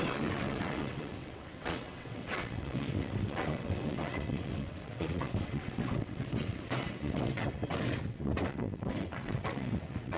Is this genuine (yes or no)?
no